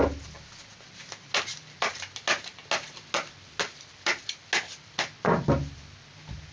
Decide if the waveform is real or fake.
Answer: real